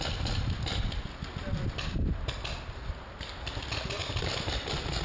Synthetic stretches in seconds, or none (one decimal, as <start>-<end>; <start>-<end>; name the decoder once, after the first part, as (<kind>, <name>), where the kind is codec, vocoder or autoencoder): none

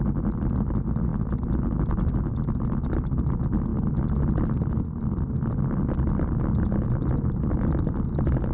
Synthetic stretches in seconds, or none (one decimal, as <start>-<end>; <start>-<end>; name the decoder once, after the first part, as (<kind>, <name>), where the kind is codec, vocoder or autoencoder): none